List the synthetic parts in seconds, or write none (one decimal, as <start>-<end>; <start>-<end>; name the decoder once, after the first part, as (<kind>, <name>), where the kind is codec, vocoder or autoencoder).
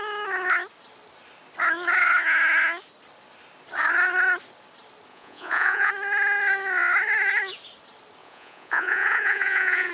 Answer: 5.1-5.9 (vocoder, Vocos); 8.2-9.9